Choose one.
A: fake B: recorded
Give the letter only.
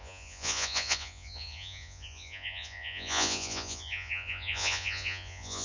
A